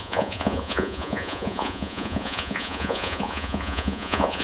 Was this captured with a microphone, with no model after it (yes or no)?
no